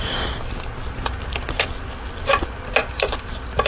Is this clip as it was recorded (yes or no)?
yes